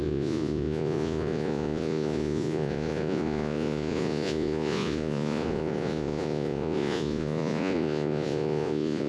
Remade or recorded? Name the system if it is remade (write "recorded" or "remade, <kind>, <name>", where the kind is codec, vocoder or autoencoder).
remade, vocoder, Vocos